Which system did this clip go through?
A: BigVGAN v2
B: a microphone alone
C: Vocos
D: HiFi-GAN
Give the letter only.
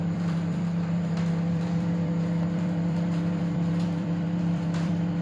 A